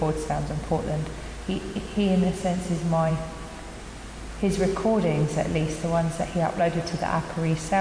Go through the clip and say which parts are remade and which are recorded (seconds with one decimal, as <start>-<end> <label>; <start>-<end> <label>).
0.0-7.8 recorded